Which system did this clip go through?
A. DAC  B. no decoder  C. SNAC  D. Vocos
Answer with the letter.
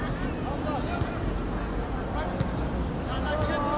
B